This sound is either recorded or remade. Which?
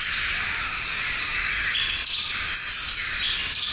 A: recorded